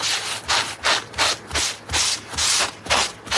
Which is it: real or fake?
real